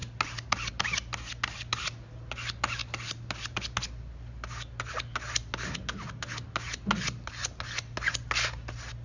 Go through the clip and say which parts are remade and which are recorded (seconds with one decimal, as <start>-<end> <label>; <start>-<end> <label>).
0.0-9.0 recorded